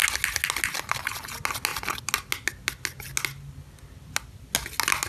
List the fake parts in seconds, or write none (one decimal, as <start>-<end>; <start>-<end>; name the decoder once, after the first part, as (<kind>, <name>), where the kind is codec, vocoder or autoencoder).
none